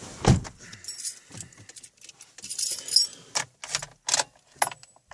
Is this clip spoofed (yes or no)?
no